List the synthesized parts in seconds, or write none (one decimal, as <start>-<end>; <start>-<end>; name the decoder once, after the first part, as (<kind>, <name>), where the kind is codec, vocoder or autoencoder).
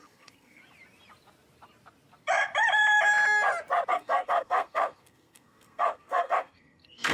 0.0-0.6 (codec, SNAC); 3.9-7.1